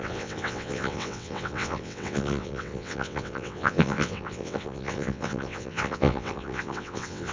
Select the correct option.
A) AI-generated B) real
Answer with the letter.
A